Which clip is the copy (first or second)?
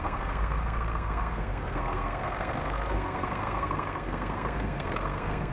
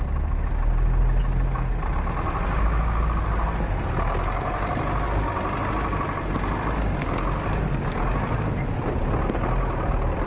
first